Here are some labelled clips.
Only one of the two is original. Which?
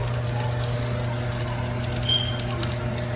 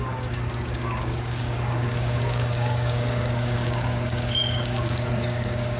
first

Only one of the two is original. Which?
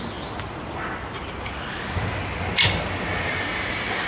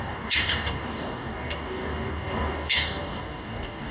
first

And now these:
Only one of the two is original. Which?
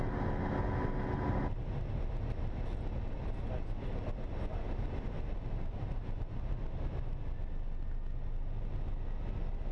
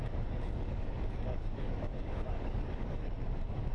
first